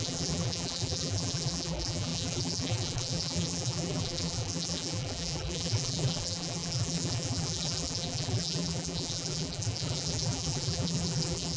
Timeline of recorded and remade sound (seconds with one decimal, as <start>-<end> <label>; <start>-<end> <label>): 0.0-11.6 remade

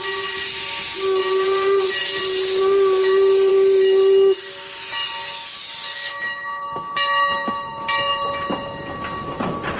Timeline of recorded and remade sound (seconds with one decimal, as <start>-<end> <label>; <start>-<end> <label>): 0.0-9.8 recorded

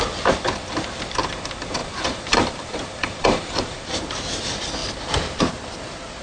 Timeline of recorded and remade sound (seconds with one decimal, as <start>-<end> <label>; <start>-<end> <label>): 0.0-1.8 recorded; 1.8-3.9 remade; 3.9-6.2 recorded

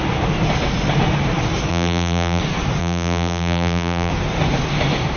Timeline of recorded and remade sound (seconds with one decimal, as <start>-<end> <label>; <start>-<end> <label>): 0.0-1.7 recorded; 1.7-2.4 remade; 2.4-2.8 recorded; 2.8-4.1 remade; 4.1-5.2 recorded

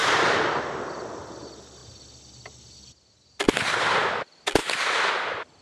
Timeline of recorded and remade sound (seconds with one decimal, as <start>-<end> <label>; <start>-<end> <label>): 0.0-0.5 remade; 0.5-5.6 recorded